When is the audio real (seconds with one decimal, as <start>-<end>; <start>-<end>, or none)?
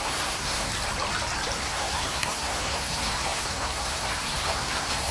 0.7-1.6